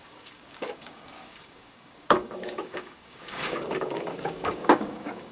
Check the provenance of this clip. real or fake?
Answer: fake